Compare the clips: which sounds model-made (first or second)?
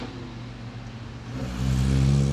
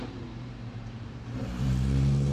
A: second